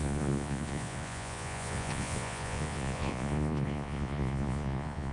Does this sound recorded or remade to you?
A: remade